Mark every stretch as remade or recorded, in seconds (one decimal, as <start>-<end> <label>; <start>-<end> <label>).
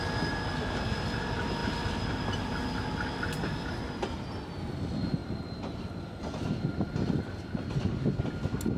0.0-8.8 recorded